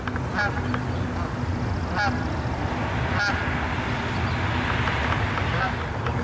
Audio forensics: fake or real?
real